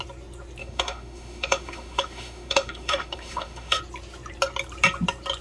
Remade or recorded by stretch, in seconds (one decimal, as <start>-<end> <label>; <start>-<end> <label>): 0.0-0.6 recorded; 0.6-3.8 remade; 3.8-5.4 recorded